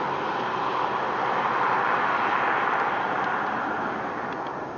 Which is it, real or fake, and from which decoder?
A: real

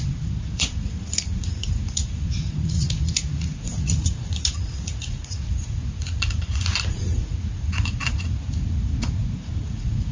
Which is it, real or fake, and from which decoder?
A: fake, vocoder, Vocos